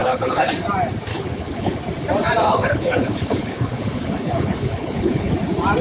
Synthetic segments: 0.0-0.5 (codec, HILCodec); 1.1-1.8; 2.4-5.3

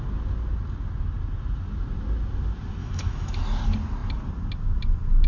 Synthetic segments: 2.8-3.4 (autoencoder, DAC-VAE)

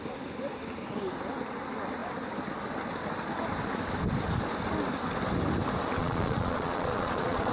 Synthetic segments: 6.0-7.5 (vocoder, Vocos)